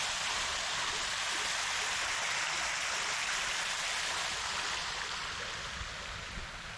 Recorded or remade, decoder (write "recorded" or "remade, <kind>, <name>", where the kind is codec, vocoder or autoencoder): recorded